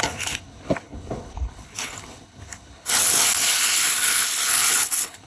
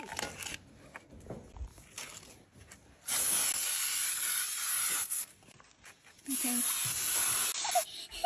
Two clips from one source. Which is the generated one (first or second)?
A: first